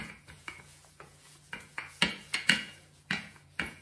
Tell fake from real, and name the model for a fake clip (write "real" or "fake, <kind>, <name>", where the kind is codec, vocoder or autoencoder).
fake, vocoder, Vocos